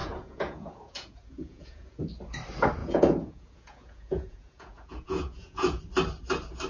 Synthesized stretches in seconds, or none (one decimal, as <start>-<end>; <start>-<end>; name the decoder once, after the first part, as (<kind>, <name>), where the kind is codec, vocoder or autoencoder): 0.0-2.0 (vocoder, Vocos); 2.8-5.8